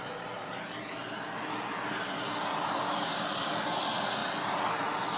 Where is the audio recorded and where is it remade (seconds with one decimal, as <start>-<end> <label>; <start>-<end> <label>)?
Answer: 0.0-2.9 recorded; 2.9-4.2 remade; 4.2-4.7 recorded; 4.7-5.2 remade